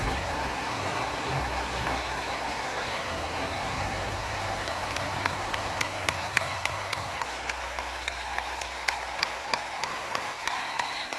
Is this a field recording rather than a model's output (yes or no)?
no